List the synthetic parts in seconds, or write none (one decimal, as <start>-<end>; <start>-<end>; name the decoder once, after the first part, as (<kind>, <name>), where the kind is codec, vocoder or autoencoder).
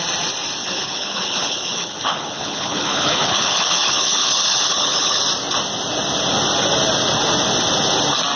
0.6-5.2 (codec, HILCodec)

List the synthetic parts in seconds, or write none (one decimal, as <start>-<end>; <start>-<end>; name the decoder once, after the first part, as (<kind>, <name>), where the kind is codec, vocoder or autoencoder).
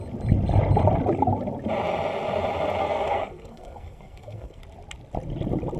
2.8-4.6 (codec, SNAC)